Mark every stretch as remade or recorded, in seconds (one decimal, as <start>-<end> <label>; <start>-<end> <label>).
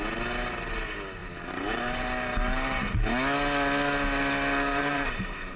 0.0-1.2 recorded; 1.2-2.9 remade; 2.9-4.7 recorded; 4.7-5.6 remade